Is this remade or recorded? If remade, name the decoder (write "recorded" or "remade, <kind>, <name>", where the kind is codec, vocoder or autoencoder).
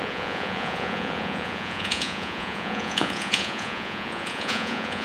remade, vocoder, Vocos